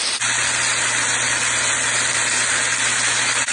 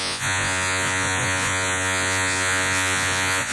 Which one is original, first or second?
first